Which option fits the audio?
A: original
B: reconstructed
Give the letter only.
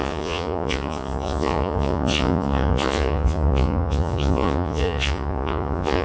B